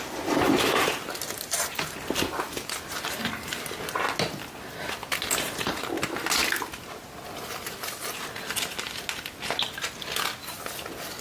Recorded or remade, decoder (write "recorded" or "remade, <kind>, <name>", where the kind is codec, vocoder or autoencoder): recorded